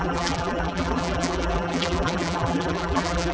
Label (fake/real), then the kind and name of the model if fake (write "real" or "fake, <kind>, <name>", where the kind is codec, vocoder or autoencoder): fake, vocoder, BigVGAN v2